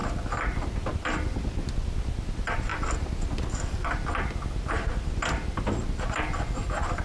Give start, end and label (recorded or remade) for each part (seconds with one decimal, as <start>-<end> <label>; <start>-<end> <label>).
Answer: 0.0-7.0 recorded